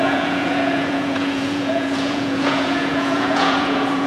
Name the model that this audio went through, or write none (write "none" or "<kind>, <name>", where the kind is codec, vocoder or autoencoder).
vocoder, Vocos